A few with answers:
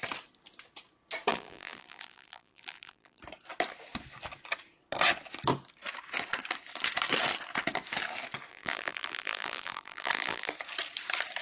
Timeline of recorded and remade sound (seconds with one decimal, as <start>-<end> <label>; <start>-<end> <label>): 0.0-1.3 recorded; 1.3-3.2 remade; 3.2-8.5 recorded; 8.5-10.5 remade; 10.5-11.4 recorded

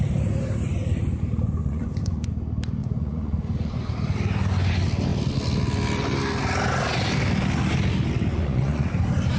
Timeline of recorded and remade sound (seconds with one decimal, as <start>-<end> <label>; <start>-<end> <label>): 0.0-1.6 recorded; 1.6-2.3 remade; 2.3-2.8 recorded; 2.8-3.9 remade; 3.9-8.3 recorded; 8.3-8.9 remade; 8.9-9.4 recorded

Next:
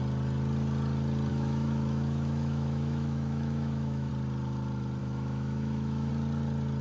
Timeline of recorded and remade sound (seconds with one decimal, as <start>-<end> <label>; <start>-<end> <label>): 0.0-1.3 recorded; 1.3-4.1 remade; 4.1-5.0 recorded; 5.0-6.1 remade; 6.1-6.8 recorded

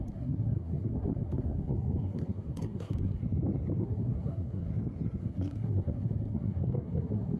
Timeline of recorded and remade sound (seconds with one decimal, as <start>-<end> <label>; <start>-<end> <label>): 0.0-3.2 remade; 3.2-3.8 recorded; 3.8-4.7 remade; 4.7-5.2 recorded; 5.2-7.4 remade